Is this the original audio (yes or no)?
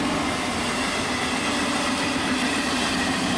yes